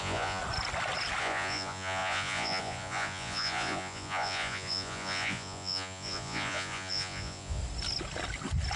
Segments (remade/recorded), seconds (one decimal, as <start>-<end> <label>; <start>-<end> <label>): 0.0-0.4 remade; 0.4-1.2 recorded; 1.2-7.6 remade; 7.6-8.8 recorded